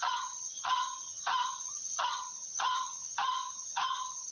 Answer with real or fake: fake